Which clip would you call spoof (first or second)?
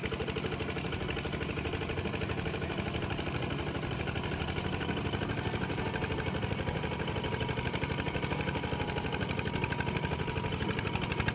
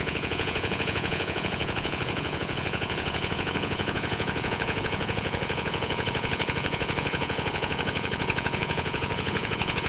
second